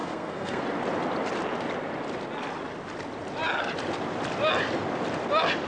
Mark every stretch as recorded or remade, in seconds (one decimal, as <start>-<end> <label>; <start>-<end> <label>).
0.0-0.6 remade; 0.6-5.7 recorded